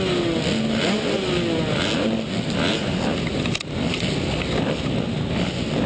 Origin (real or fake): real